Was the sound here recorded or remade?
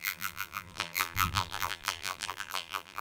remade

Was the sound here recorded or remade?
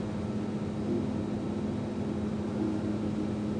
recorded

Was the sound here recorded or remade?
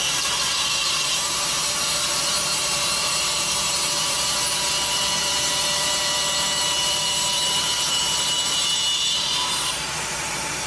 remade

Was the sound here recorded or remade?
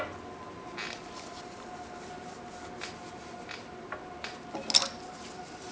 recorded